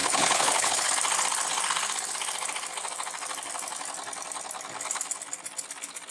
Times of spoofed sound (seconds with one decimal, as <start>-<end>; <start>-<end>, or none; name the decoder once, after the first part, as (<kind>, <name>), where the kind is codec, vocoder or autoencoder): 0.0-0.9 (codec, HILCodec)